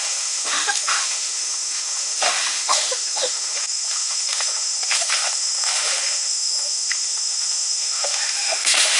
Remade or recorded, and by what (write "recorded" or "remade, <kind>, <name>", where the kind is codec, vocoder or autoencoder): remade, autoencoder, DAC-VAE